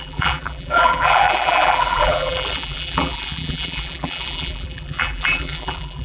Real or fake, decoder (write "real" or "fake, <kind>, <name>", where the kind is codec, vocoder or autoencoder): fake, vocoder, BigVGAN v2